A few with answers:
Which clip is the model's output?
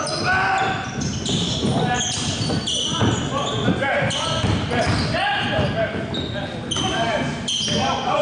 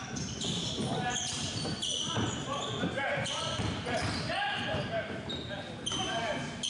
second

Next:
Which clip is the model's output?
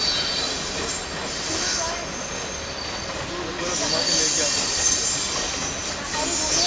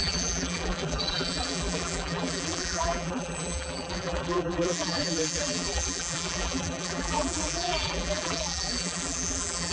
second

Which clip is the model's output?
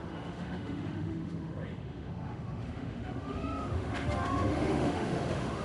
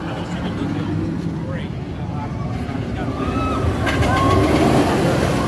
first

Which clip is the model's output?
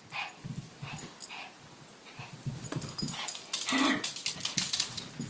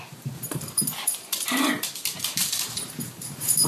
second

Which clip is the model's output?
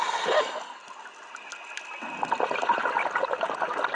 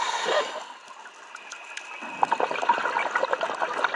second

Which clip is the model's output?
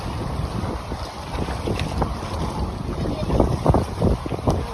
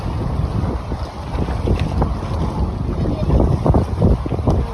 first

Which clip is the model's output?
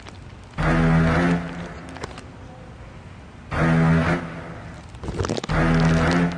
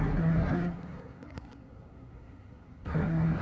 second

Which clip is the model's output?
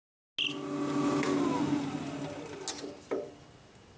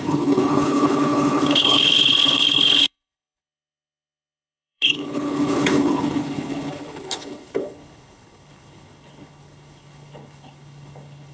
second